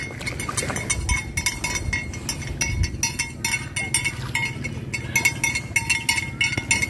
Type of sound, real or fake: real